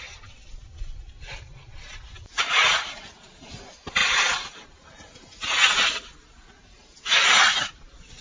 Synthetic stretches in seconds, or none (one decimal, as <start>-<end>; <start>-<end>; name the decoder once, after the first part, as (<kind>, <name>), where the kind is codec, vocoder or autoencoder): none